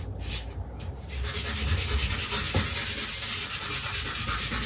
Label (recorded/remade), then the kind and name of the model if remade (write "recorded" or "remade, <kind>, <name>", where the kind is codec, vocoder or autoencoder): recorded